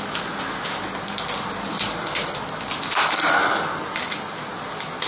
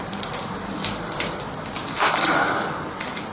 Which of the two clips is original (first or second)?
first